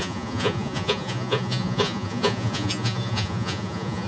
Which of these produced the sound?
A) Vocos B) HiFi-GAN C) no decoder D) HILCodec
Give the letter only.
A